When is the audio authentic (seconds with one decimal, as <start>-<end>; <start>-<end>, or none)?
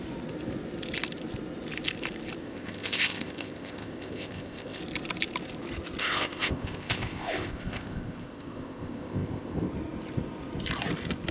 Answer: 0.0-2.4; 4.8-6.0; 9.7-11.3